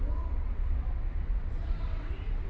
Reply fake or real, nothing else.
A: fake